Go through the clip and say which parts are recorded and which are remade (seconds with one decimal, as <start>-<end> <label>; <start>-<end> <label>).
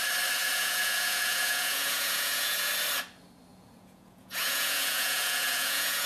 0.0-0.4 recorded; 0.4-2.7 remade; 2.7-3.5 recorded; 3.5-6.1 remade